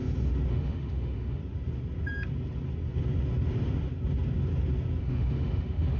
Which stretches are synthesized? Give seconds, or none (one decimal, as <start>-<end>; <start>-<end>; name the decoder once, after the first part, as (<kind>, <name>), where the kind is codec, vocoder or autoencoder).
0.5-1.4 (autoencoder, DAC-VAE); 5.0-6.0